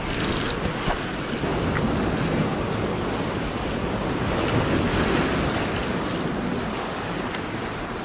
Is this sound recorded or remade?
recorded